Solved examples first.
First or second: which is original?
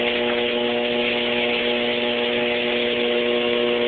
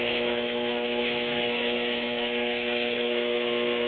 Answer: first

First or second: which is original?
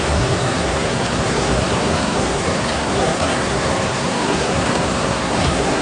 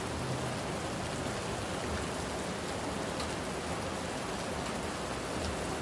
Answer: second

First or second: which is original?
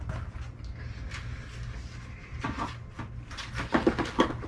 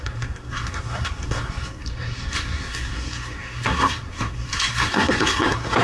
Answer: first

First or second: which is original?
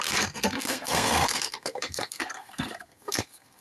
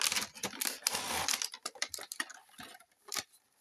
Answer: second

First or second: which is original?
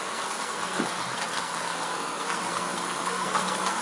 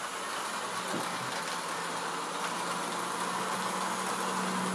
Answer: second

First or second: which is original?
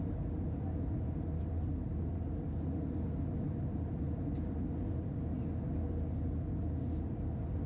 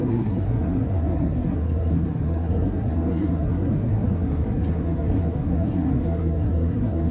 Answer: first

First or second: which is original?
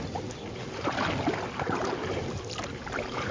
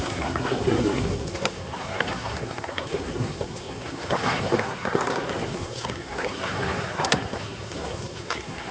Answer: first